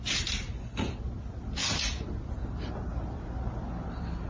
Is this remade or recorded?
recorded